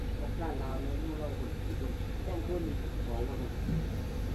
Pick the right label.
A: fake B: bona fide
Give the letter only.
B